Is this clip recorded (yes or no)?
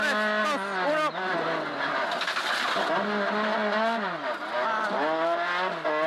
yes